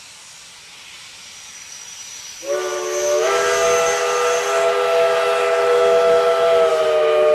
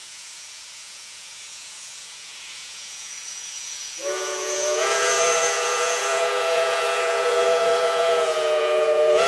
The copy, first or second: second